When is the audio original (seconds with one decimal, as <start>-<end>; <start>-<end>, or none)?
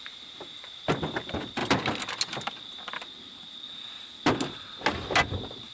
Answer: 0.0-5.7